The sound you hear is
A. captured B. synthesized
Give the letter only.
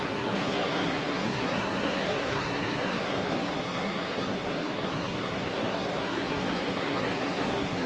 B